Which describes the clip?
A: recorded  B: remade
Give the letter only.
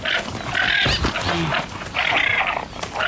A